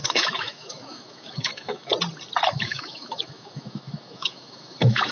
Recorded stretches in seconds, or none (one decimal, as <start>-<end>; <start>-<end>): 1.9-2.5

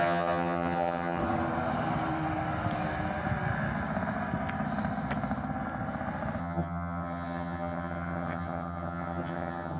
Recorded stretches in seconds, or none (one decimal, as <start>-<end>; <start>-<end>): 1.2-6.4

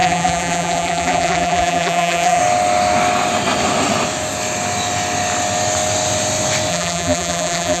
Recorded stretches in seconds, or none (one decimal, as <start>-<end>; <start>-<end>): 2.4-6.7